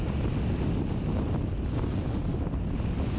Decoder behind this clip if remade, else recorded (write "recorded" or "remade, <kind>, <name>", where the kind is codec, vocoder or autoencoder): recorded